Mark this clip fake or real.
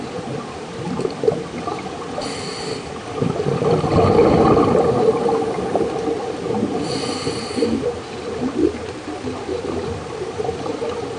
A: fake